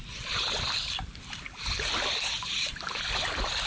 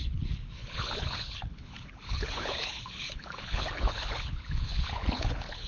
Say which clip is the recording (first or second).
first